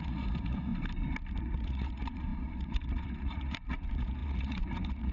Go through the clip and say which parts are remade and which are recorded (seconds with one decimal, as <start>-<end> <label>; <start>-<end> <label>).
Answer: 0.0-0.7 remade; 0.7-1.4 recorded; 1.4-5.1 remade